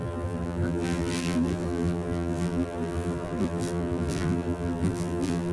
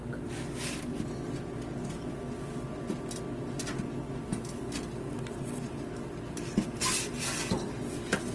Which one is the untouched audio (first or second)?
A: second